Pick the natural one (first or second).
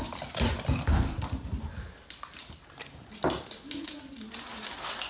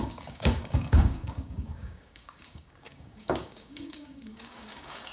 first